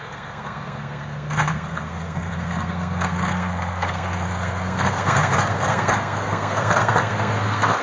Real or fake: fake